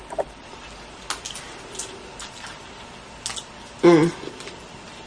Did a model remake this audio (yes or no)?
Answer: no